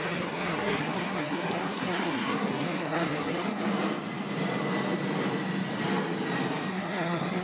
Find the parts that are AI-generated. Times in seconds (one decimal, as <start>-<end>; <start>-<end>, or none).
0.0-3.6; 6.7-7.4